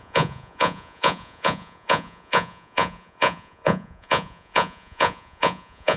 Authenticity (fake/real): fake